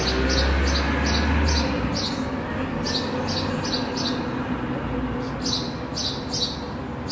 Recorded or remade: recorded